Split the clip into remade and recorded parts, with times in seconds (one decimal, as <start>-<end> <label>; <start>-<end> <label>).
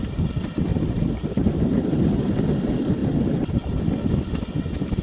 0.0-0.7 recorded; 0.7-2.2 remade; 2.2-5.0 recorded